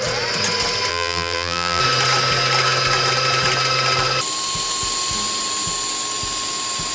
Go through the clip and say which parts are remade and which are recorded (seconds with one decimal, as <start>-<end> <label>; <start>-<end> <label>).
0.0-0.9 recorded; 0.9-1.8 remade; 1.8-6.9 recorded